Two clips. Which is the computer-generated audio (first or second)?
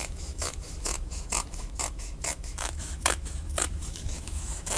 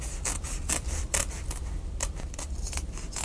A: first